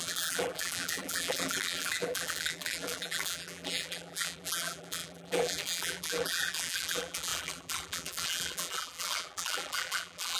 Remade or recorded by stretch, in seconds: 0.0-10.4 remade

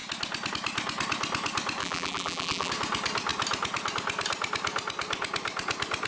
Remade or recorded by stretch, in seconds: 0.0-1.8 recorded; 1.8-2.7 remade; 2.7-6.1 recorded

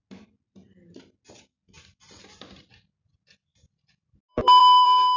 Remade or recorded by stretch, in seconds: 0.0-4.3 recorded; 4.3-5.2 remade

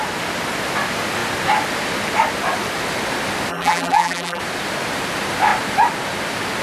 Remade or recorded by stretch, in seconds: 0.0-3.5 recorded; 3.5-4.4 remade; 4.4-6.6 recorded

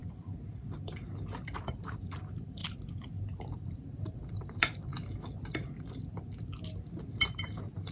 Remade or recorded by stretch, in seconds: 0.0-1.6 recorded; 1.6-2.6 remade; 2.6-3.4 recorded; 3.4-4.9 remade; 4.9-7.2 recorded; 7.2-7.9 remade